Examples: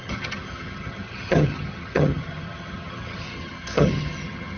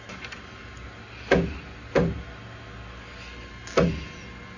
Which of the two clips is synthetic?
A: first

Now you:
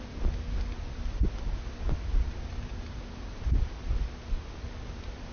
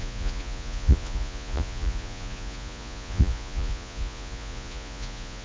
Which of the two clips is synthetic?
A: second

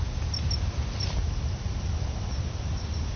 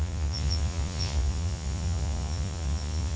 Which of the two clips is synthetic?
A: second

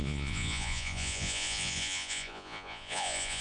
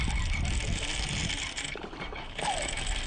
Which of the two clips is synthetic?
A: first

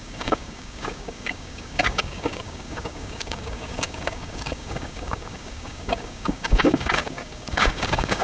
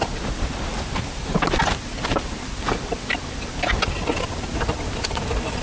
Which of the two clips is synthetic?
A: first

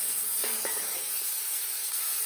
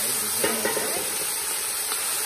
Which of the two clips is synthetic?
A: first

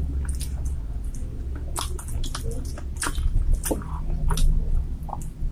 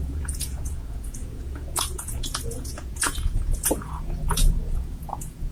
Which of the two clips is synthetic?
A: second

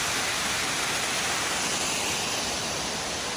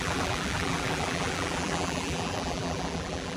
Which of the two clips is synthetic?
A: second